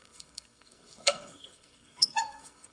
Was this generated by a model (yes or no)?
yes